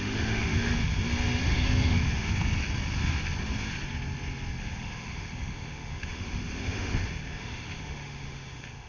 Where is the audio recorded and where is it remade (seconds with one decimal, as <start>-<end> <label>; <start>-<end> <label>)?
0.0-0.9 remade; 0.9-1.4 recorded; 1.4-2.3 remade; 2.3-4.6 recorded; 4.6-8.9 remade